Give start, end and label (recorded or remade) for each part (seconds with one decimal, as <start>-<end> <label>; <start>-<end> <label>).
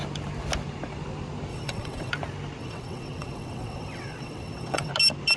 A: 0.0-1.5 recorded; 1.5-2.1 remade; 2.1-2.6 recorded; 2.6-4.9 remade; 4.9-5.4 recorded